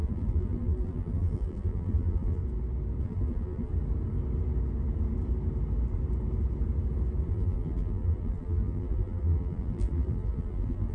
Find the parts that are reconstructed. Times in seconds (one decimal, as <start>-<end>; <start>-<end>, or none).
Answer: 0.0-2.4; 3.0-3.7; 7.3-10.9